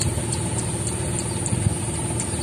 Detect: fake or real real